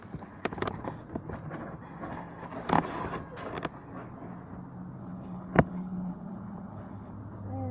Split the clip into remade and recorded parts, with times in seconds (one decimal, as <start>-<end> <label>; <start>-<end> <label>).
0.0-5.0 recorded; 5.0-7.1 remade; 7.1-7.7 recorded